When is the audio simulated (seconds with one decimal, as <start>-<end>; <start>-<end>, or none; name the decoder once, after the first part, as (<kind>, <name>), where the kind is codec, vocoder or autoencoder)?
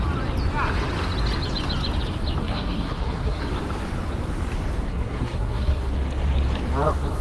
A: 2.4-3.5 (codec, SNAC); 4.9-5.9